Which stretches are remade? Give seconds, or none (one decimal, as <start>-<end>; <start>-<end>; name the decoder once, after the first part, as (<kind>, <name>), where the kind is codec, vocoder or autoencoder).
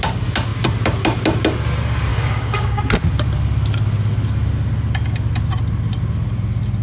2.1-2.8 (codec, DAC)